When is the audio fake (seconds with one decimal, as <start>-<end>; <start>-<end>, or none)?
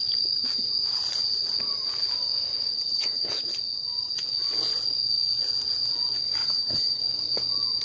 2.7-3.3; 6.4-7.0